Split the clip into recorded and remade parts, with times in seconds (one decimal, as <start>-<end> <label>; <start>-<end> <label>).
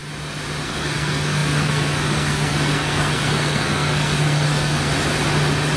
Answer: 0.0-0.6 recorded; 0.6-4.9 remade; 4.9-5.8 recorded